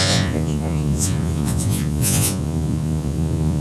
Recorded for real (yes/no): no